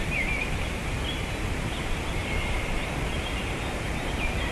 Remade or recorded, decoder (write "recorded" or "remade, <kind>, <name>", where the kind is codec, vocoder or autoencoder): remade, vocoder, BigVGAN v2